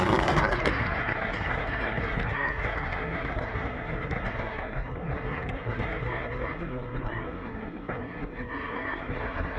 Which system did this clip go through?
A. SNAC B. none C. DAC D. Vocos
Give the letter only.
A